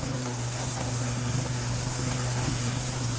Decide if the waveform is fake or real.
fake